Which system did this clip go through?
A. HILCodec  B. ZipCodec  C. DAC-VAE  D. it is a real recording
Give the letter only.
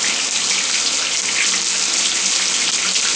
D